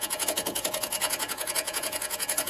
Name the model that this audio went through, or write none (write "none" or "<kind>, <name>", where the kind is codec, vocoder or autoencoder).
vocoder, Vocos